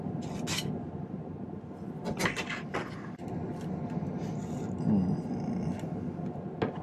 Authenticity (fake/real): real